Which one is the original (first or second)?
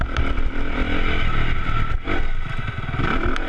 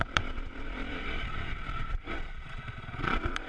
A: first